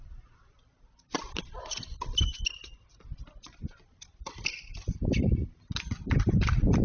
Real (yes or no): yes